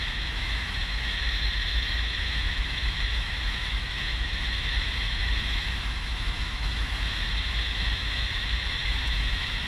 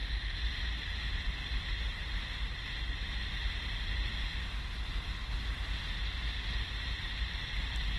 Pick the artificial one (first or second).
first